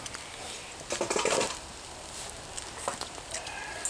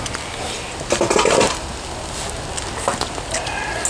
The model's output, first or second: first